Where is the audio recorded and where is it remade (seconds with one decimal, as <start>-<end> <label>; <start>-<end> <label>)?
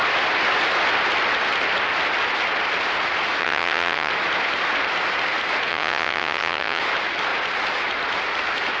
0.0-3.4 recorded; 3.4-4.1 remade; 4.1-5.7 recorded; 5.7-6.8 remade; 6.8-8.8 recorded